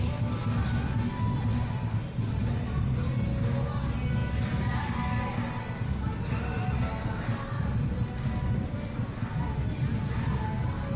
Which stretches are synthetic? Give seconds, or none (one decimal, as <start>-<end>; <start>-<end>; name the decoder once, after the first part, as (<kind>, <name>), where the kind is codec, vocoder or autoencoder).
none

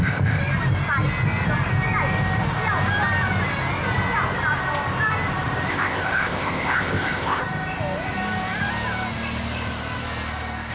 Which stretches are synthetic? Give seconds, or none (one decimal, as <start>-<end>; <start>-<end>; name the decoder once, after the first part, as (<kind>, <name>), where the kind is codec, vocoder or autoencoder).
0.0-0.4 (codec, ZipCodec); 5.7-7.4

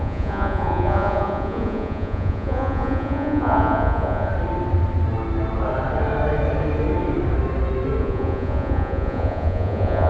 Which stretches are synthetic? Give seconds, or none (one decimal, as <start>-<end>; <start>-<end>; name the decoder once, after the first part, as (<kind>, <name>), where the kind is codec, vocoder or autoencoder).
0.0-4.3 (vocoder, Vocos); 8.0-10.1

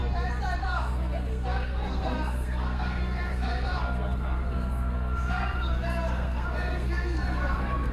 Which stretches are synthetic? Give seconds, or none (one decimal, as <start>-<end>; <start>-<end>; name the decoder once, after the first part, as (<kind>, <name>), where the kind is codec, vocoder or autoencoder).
0.6-7.9 (codec, SNAC)

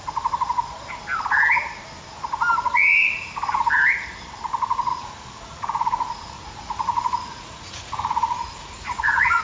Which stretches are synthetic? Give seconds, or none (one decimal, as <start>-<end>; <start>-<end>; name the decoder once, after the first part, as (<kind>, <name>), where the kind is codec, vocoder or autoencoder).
4.9-9.4 (vocoder, Vocos)

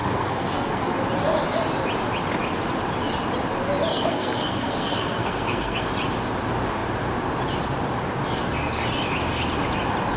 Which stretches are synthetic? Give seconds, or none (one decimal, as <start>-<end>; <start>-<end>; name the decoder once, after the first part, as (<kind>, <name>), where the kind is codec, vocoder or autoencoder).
0.0-1.0 (codec, SNAC); 3.9-5.9

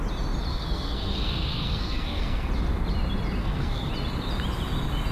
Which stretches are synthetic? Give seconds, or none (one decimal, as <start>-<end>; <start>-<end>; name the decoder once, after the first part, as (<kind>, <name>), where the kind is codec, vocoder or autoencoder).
0.5-2.5 (codec, SNAC); 3.4-3.9

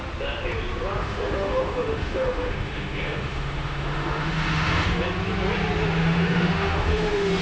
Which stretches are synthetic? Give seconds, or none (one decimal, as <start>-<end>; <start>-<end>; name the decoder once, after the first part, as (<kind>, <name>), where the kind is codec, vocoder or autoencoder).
1.0-5.0 (autoencoder, DAC-VAE); 6.0-7.4